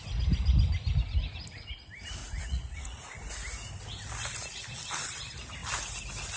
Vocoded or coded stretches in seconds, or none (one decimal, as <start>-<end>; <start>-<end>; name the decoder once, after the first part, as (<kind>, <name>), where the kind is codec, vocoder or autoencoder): 2.2-3.3 (vocoder, Vocos)